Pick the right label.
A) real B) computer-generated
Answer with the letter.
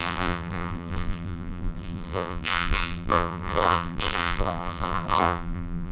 B